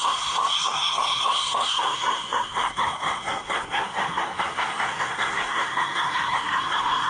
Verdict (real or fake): fake